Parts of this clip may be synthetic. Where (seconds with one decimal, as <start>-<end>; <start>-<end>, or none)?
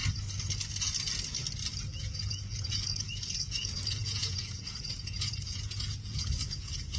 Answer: 2.0-7.0